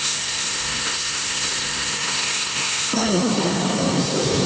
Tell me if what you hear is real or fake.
fake